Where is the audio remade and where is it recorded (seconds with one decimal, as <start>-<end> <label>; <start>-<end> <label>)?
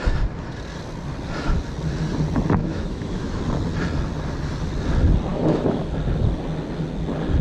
0.0-2.6 recorded; 2.6-3.4 remade; 3.4-5.3 recorded; 5.3-5.8 remade; 5.8-7.4 recorded